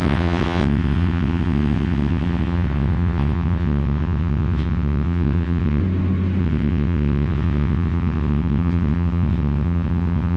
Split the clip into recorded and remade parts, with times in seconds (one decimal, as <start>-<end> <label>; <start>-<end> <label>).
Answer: 0.0-5.8 remade; 5.8-6.4 recorded; 6.4-10.4 remade